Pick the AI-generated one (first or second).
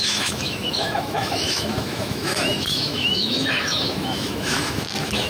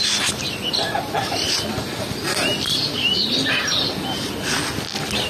first